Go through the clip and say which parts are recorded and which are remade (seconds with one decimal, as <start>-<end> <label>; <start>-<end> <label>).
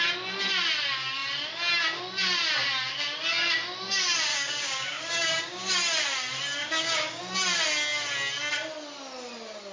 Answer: 0.0-4.3 recorded; 4.3-5.7 remade; 5.7-6.6 recorded; 6.6-7.2 remade; 7.2-9.7 recorded